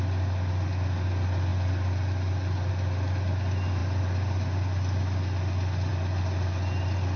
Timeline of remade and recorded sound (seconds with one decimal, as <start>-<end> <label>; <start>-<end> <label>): 0.0-7.2 recorded